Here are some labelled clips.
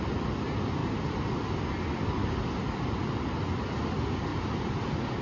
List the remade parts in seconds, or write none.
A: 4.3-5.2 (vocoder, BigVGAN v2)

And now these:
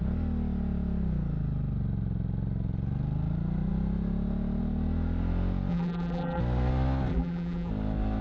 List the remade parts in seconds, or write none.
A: 5.7-6.4 (vocoder, BigVGAN v2); 7.1-7.7

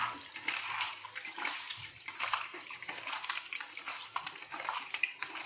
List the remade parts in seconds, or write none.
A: 1.7-5.0 (vocoder, BigVGAN v2)

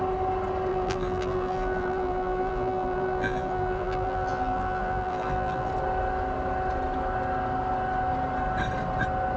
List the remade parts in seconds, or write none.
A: 0.7-5.7 (vocoder, BigVGAN v2)